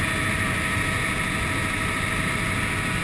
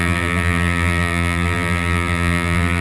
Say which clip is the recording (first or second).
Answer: first